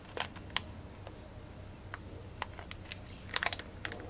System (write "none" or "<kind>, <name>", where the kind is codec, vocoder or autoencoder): none